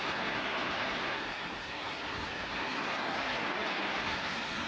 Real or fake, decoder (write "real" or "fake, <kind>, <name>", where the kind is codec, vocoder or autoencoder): fake, codec, SNAC